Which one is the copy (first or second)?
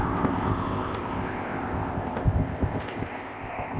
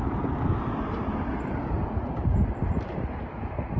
first